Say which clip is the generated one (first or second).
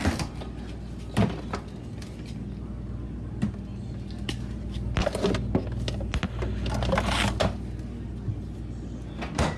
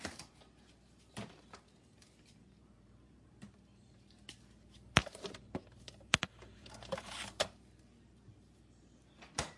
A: second